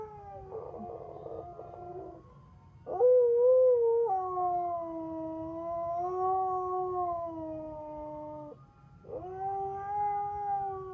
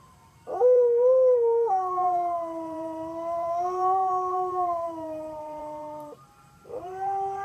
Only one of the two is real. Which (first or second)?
first